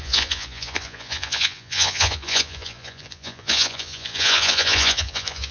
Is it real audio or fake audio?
fake